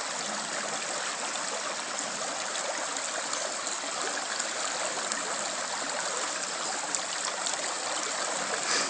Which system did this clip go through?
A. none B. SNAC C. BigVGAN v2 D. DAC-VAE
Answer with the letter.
A